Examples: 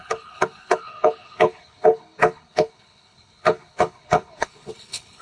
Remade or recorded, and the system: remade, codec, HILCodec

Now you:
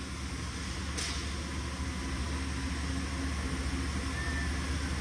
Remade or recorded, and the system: recorded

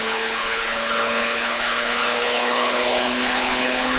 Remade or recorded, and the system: remade, codec, HILCodec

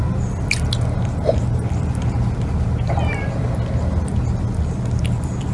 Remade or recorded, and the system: recorded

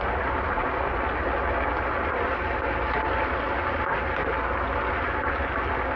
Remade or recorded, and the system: recorded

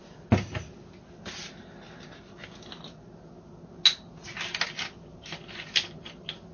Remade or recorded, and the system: recorded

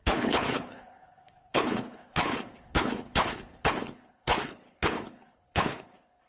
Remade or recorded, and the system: remade, codec, HILCodec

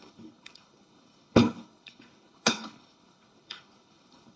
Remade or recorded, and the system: remade, codec, HILCodec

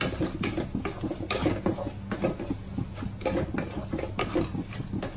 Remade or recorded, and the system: recorded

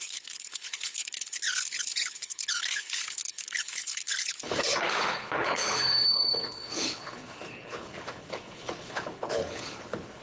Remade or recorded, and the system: remade, codec, HILCodec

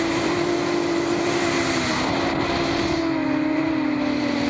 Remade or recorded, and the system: recorded